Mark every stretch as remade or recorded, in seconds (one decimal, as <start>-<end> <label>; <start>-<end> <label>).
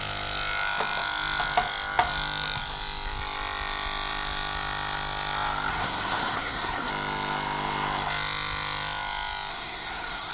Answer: 0.0-5.7 recorded; 5.7-6.9 remade; 6.9-9.5 recorded; 9.5-10.3 remade